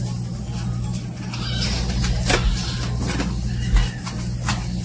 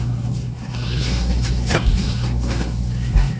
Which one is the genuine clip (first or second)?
first